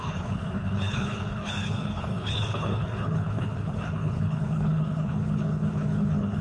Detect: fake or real fake